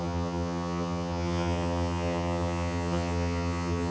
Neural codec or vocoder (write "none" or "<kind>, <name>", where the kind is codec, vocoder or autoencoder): vocoder, HiFi-GAN